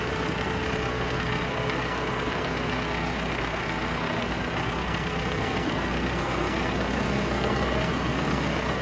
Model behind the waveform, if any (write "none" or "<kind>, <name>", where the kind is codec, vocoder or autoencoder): codec, SNAC